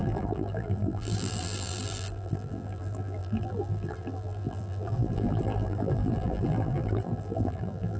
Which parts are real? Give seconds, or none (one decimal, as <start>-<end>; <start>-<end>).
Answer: none